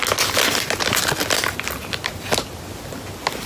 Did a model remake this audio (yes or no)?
no